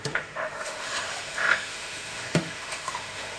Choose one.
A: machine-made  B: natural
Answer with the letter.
A